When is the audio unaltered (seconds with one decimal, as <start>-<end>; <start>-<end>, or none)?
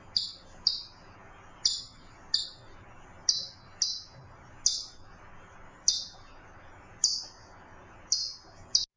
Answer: 0.0-9.0